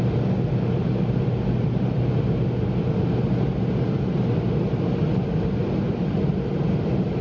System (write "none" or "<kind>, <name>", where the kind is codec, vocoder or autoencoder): none